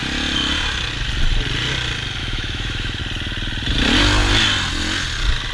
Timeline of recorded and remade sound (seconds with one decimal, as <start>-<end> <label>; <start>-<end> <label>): 0.0-2.2 recorded; 2.2-3.0 remade; 3.0-5.5 recorded